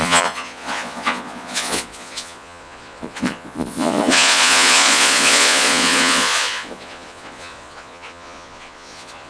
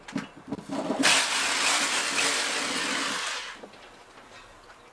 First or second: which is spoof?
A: first